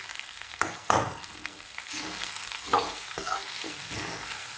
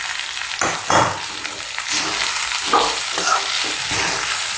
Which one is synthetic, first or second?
first